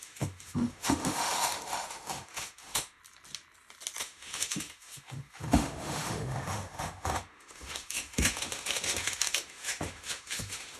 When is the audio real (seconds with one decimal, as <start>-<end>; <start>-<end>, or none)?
3.0-4.0